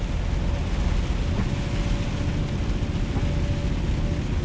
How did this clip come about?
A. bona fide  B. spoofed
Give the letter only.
A